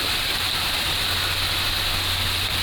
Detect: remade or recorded recorded